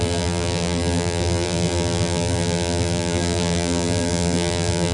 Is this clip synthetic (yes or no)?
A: yes